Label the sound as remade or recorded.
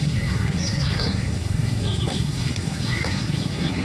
remade